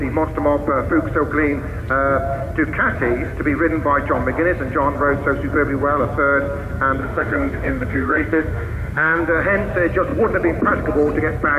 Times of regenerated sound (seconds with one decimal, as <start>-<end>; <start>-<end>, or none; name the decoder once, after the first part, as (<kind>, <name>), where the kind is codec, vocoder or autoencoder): 7.0-9.2 (autoencoder, DAC-VAE)